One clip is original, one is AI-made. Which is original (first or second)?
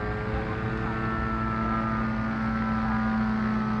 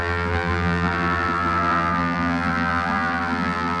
first